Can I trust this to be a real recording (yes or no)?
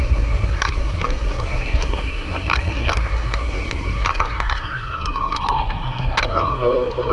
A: no